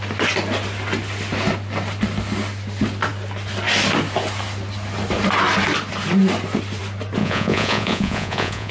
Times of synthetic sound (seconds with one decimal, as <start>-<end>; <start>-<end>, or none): 7.2-8.7